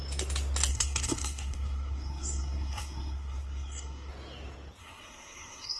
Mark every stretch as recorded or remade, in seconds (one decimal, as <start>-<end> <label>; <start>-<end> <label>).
0.0-0.7 recorded; 0.7-4.1 remade; 4.1-4.8 recorded; 4.8-5.8 remade